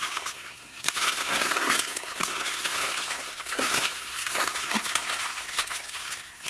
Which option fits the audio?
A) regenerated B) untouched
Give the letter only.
A